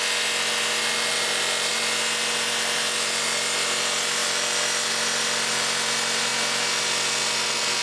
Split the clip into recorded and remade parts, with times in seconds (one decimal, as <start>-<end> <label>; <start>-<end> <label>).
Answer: 0.0-7.8 recorded